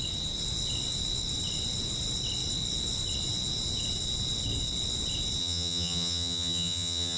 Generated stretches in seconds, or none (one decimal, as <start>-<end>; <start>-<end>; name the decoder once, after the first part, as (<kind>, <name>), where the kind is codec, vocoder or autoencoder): 5.4-7.2 (vocoder, HiFi-GAN)